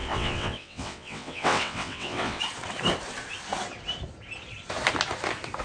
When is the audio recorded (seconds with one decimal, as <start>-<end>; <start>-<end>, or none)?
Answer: 2.4-5.6